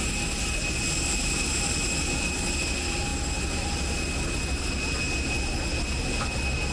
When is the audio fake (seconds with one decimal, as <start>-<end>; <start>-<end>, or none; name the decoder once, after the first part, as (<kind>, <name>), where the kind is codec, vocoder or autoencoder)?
none